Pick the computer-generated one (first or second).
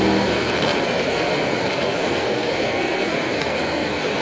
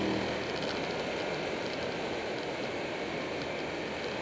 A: first